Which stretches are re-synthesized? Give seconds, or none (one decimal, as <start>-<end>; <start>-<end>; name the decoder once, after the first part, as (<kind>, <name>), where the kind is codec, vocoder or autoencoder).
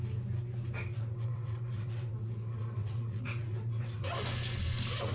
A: 0.9-4.0 (vocoder, WaveNeXt)